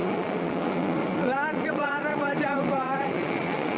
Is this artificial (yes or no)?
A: yes